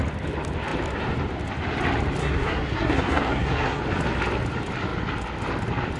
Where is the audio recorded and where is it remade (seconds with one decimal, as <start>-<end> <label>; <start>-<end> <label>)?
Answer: 0.0-2.2 recorded; 2.2-3.8 remade; 3.8-6.0 recorded